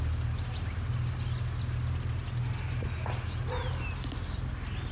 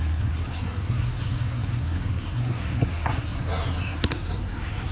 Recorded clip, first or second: first